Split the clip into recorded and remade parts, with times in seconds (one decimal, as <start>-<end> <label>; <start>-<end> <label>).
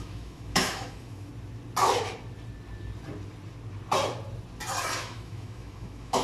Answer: 0.0-1.3 remade; 1.3-5.0 recorded; 5.0-6.2 remade